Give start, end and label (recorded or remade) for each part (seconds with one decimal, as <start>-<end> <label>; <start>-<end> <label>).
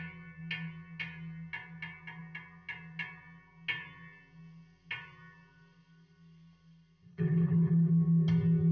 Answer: 0.0-7.1 recorded; 7.1-7.9 remade; 7.9-8.7 recorded